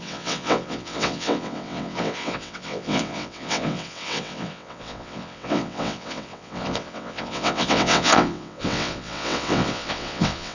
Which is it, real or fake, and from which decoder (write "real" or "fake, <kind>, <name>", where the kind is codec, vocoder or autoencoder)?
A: fake, vocoder, WaveNeXt